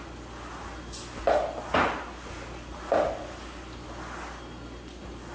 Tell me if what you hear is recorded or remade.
recorded